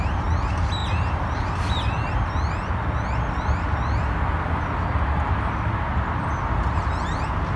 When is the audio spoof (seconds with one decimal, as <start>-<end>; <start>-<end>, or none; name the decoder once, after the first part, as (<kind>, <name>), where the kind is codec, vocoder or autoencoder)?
none